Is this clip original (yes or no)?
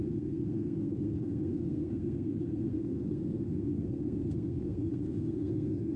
no